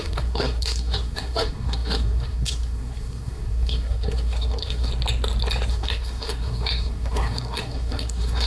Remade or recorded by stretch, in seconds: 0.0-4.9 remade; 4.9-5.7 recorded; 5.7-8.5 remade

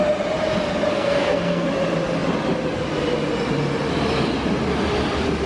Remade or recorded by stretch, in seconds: 0.0-0.9 recorded; 0.9-1.7 remade; 1.7-5.5 recorded

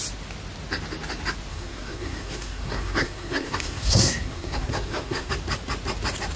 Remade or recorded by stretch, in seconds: 0.0-1.5 recorded; 1.5-5.3 remade; 5.3-6.4 recorded